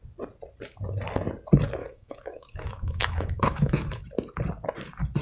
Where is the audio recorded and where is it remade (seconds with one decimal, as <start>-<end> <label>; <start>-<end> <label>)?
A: 0.0-1.8 recorded; 1.8-4.0 remade; 4.0-5.2 recorded